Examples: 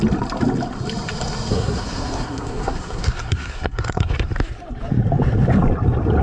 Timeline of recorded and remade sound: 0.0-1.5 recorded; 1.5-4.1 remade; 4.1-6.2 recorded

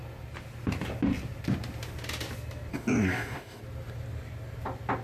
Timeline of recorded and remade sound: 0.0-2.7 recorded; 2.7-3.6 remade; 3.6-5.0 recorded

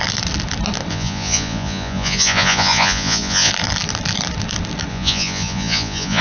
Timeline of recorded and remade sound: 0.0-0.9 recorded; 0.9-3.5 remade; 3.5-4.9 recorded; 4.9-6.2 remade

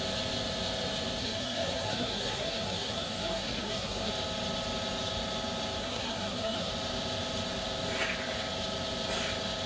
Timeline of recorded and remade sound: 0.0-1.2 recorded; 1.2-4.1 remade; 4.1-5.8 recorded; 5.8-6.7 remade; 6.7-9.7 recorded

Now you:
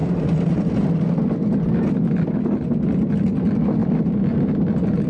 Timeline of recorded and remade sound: 0.0-5.1 recorded